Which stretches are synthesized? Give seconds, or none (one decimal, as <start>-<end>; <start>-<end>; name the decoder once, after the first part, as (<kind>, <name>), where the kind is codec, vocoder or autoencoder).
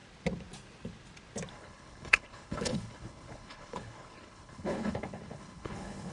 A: 1.5-6.1 (codec, HILCodec)